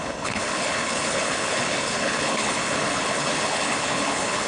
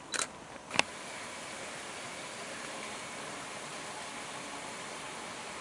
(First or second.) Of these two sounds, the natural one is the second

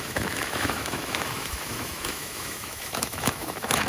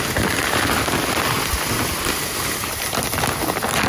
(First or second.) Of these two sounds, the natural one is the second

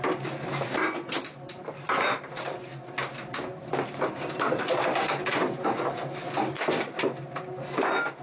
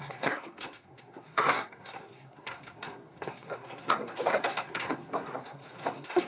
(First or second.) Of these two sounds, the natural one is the first